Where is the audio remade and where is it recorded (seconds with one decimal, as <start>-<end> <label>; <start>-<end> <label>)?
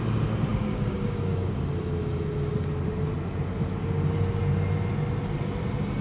0.0-0.5 recorded; 0.5-1.6 remade; 1.6-6.0 recorded